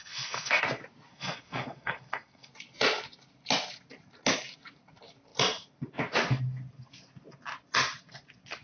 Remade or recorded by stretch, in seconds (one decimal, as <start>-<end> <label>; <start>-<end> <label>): 0.0-0.6 remade; 0.6-1.1 recorded; 1.1-2.5 remade; 2.5-8.6 recorded